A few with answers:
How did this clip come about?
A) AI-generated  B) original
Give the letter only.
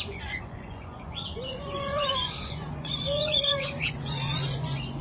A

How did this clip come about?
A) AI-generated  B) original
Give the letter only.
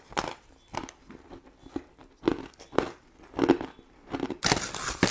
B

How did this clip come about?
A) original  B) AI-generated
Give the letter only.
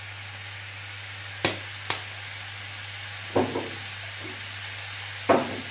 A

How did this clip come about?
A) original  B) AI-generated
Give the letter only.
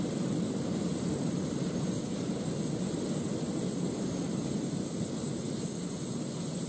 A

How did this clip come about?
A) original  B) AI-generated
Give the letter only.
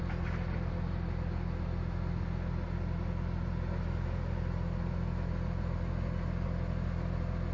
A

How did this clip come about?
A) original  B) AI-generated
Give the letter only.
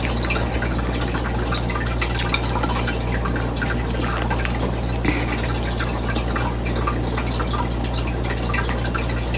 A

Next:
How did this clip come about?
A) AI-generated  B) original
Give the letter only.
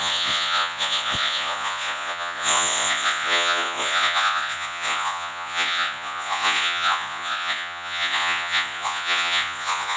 A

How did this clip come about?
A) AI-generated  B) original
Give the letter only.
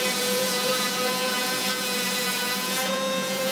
A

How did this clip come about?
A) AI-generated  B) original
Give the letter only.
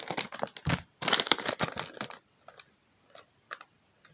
B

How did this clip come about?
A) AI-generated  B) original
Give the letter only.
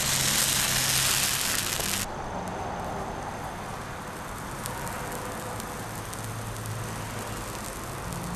B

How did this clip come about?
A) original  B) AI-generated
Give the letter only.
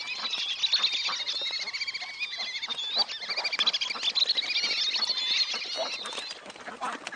A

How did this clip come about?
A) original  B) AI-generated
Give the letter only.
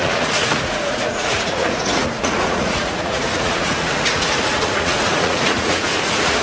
B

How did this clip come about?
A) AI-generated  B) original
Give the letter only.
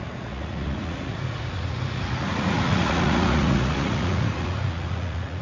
A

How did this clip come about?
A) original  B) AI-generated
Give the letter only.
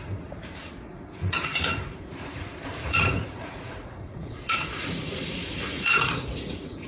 B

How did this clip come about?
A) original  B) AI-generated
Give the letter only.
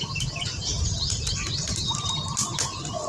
A